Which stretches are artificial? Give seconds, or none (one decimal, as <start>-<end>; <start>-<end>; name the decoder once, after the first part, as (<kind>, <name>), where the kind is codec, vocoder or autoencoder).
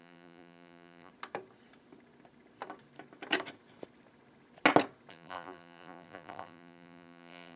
0.0-1.1 (vocoder, BigVGAN v2); 5.1-7.6